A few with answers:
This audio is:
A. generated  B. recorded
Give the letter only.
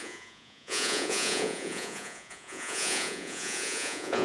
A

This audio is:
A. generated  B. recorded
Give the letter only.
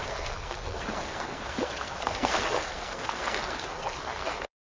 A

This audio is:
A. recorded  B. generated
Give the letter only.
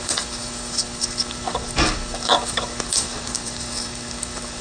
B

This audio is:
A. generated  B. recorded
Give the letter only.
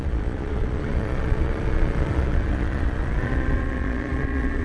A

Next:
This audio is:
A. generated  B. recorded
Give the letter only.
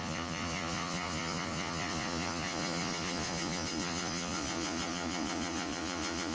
A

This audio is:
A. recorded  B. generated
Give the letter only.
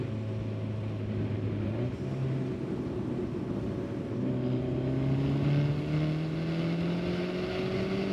A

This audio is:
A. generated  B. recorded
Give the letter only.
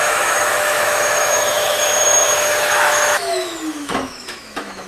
A